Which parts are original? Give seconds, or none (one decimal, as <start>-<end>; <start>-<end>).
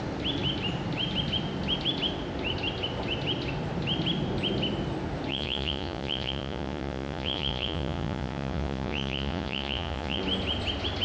0.0-5.3; 10.2-11.0